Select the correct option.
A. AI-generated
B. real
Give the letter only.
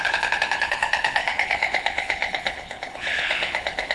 A